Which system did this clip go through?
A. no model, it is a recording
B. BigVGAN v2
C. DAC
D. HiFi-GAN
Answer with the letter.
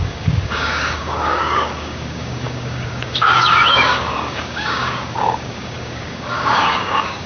C